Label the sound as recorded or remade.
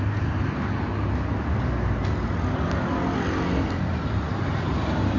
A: recorded